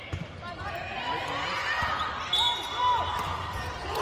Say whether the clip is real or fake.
real